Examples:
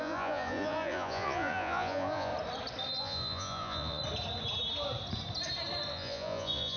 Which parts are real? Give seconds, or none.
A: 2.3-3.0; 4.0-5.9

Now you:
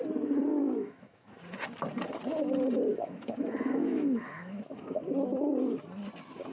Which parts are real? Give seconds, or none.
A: 0.0-0.5; 1.4-2.9; 5.0-6.5

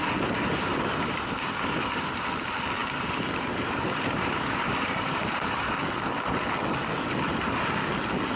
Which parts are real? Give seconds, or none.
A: 0.0-0.7; 2.3-2.8; 5.7-8.4

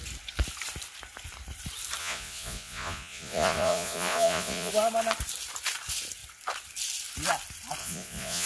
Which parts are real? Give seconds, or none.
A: 0.0-2.0; 4.7-7.8